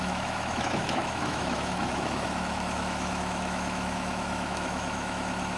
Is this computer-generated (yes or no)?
yes